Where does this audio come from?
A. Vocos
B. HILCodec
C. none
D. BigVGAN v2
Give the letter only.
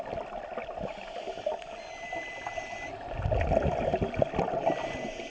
C